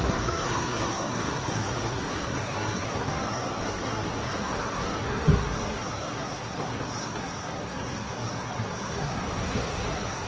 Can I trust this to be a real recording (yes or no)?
no